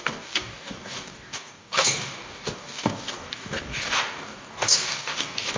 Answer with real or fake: fake